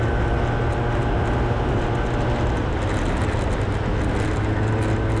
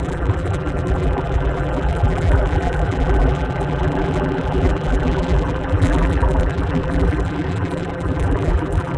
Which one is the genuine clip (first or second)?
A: first